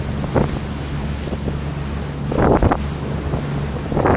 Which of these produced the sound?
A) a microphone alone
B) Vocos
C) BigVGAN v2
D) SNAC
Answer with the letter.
A